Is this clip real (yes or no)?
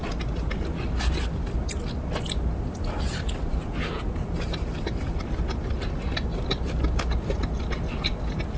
yes